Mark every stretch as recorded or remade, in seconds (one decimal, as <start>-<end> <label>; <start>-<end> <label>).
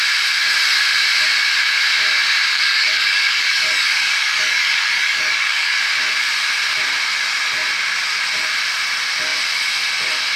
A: 0.0-2.5 recorded; 2.5-5.8 remade; 5.8-10.4 recorded